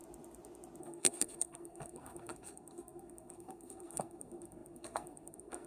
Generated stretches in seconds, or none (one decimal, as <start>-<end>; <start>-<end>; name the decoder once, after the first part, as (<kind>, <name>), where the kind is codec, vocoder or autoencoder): 0.8-5.7 (codec, SNAC)